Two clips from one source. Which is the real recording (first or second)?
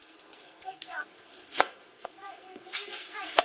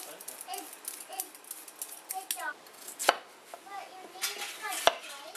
second